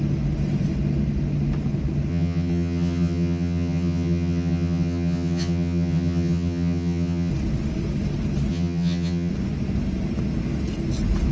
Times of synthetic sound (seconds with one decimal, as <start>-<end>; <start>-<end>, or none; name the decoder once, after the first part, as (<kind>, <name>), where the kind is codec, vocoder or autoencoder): 2.1-7.3 (vocoder, HiFi-GAN); 8.5-9.3